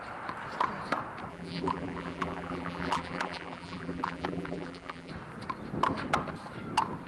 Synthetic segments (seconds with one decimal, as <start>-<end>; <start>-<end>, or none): 1.3-5.1